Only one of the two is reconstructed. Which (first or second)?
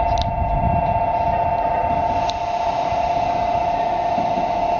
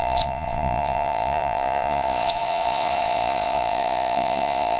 second